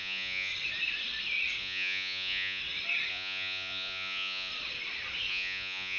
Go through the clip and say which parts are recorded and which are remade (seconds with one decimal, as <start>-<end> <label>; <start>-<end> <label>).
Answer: 0.0-0.5 remade; 0.5-1.6 recorded; 1.6-2.6 remade; 2.6-3.1 recorded; 3.1-4.5 remade; 4.5-5.3 recorded; 5.3-6.0 remade

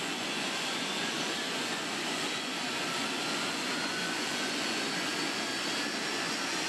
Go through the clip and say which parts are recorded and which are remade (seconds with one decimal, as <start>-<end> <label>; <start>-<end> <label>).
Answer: 0.0-5.5 remade; 5.5-6.1 recorded; 6.1-6.7 remade